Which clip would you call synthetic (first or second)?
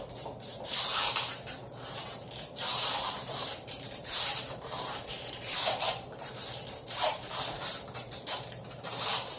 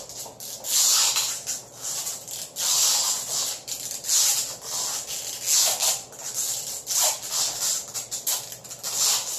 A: first